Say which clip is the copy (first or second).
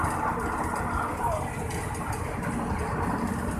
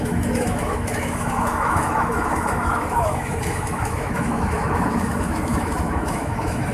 second